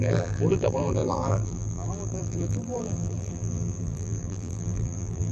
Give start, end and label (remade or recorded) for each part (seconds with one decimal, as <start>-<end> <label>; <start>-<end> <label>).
0.0-5.3 remade